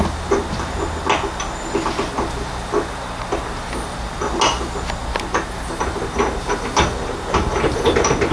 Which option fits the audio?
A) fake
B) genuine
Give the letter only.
B